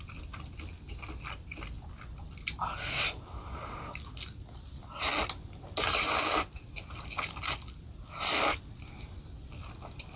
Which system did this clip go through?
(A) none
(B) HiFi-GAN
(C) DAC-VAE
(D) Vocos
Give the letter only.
A